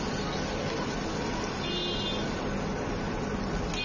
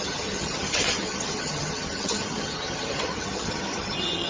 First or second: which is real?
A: first